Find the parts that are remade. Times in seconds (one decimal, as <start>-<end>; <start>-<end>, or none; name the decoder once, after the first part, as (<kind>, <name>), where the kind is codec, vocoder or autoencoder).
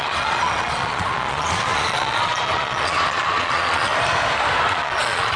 0.0-3.9 (vocoder, Vocos); 4.7-5.4